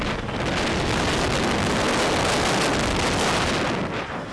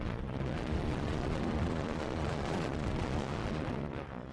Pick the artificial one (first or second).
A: second